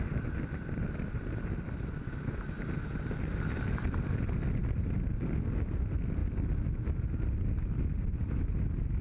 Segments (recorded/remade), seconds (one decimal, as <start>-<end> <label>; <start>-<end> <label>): 0.0-9.0 recorded